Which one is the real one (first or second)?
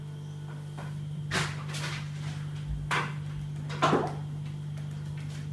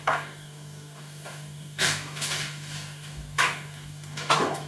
first